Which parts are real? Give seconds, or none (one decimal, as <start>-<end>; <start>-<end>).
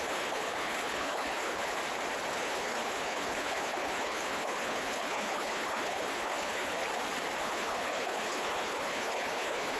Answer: 1.8-2.3; 6.8-7.4